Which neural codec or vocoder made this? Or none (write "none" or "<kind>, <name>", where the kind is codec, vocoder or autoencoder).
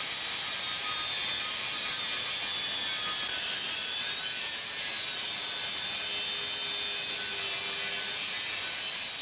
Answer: none